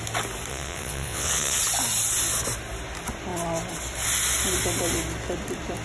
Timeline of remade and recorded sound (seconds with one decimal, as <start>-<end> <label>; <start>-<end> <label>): 0.0-0.5 recorded; 0.5-1.6 remade; 1.6-5.8 recorded